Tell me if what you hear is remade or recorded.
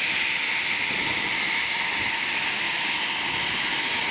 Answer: recorded